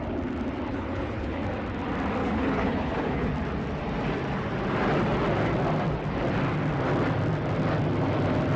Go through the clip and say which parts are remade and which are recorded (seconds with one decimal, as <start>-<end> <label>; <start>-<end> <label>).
0.0-0.7 recorded; 0.7-1.4 remade; 1.4-2.2 recorded; 2.2-3.3 remade; 3.3-8.6 recorded